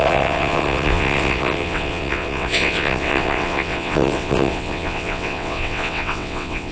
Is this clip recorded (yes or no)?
no